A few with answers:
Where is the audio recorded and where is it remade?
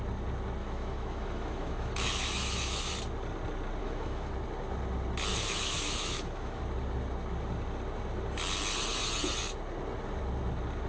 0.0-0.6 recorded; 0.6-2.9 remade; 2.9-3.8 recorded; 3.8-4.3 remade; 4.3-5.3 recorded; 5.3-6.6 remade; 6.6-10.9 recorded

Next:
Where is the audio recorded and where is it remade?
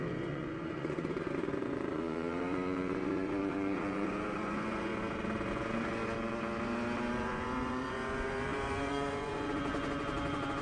0.0-4.9 remade; 4.9-5.5 recorded; 5.5-6.0 remade; 6.0-7.2 recorded; 7.2-10.6 remade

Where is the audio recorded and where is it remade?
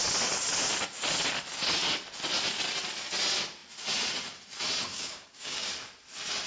0.0-4.9 recorded; 4.9-5.7 remade; 5.7-6.5 recorded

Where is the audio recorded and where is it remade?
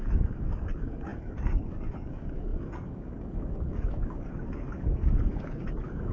0.0-6.1 remade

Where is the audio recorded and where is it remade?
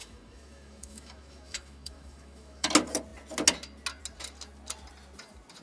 0.0-2.7 remade; 2.7-5.6 recorded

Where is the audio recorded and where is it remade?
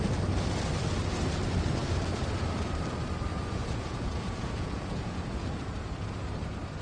0.0-3.3 recorded; 3.3-6.2 remade; 6.2-6.8 recorded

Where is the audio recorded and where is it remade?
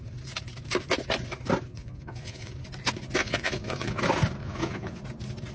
0.0-1.7 recorded; 1.7-2.5 remade; 2.5-3.2 recorded; 3.2-4.0 remade; 4.0-4.4 recorded; 4.4-5.0 remade; 5.0-5.5 recorded